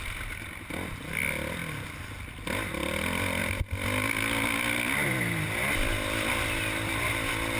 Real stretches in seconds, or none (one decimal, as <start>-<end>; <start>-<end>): 0.0-7.6